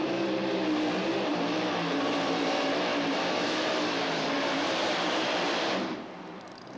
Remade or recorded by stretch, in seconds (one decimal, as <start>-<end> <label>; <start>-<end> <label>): 0.0-6.8 remade